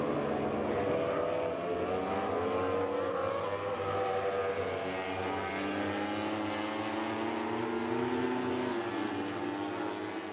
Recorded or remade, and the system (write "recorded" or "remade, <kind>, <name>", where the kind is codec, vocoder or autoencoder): recorded